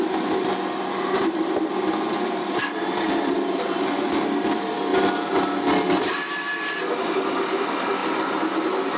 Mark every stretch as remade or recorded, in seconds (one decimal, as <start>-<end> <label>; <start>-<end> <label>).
0.0-4.9 remade; 4.9-6.0 recorded; 6.0-8.0 remade; 8.0-9.0 recorded